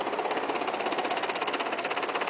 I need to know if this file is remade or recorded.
recorded